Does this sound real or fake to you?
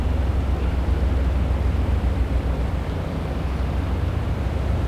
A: real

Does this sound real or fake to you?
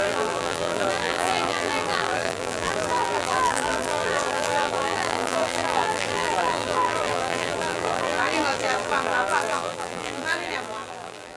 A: fake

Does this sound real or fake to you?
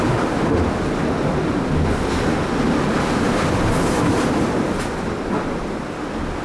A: real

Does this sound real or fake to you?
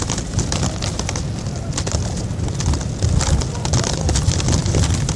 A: real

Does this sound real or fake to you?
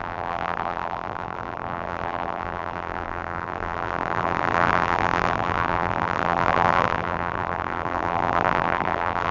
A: fake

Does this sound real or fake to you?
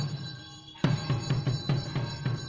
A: fake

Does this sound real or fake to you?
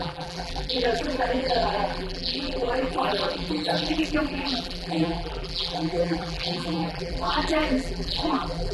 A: fake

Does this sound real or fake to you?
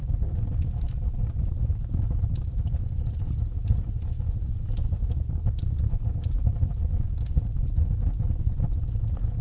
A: real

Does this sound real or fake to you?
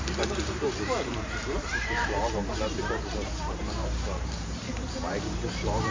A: fake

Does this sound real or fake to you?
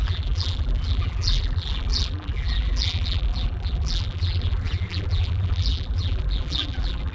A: fake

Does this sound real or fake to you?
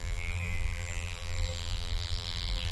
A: fake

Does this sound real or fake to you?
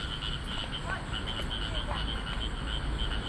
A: real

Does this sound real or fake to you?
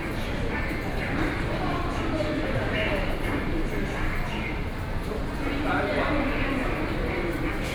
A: real